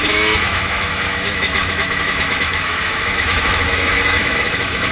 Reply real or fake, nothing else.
fake